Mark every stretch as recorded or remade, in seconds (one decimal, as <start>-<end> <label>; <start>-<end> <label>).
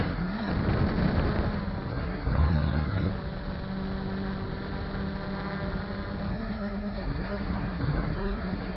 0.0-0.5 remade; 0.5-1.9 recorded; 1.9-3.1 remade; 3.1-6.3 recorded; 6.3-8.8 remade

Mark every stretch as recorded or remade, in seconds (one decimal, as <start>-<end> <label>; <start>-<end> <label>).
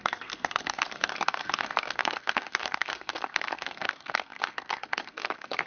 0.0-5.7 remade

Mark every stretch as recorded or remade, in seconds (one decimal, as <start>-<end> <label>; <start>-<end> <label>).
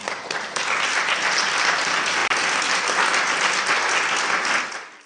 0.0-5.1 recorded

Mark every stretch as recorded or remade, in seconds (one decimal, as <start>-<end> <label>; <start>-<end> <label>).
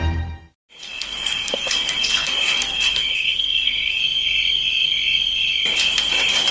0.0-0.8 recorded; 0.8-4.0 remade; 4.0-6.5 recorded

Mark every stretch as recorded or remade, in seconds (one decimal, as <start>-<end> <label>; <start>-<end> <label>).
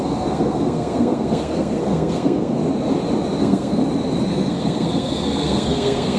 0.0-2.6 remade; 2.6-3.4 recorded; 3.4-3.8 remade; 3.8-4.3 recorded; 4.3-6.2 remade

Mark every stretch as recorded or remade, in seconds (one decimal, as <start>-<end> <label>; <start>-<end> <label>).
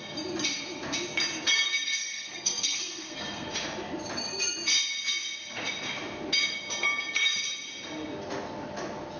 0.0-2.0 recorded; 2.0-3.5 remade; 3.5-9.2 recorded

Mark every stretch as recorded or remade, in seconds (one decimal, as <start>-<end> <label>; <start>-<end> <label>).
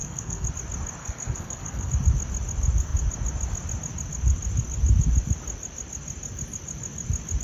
0.0-0.5 remade; 0.5-1.0 recorded; 1.0-1.9 remade; 1.9-7.4 recorded